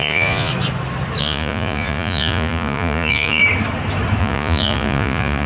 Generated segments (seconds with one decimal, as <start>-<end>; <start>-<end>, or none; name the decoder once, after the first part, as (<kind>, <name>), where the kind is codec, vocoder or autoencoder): 0.0-0.5 (vocoder, Vocos); 1.2-3.4; 4.2-5.5